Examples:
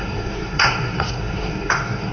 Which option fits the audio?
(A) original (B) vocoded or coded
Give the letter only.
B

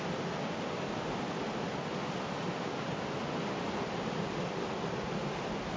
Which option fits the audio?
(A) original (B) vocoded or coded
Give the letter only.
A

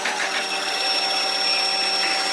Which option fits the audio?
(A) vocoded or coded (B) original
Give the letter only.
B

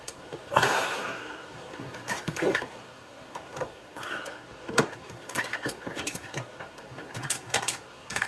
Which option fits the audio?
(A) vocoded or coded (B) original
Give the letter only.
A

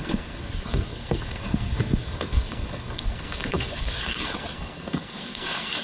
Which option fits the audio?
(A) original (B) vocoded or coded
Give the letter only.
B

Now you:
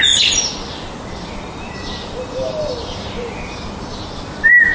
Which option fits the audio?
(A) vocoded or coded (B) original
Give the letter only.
B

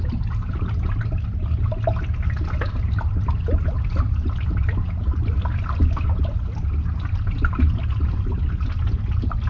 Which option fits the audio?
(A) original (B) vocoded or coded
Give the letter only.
A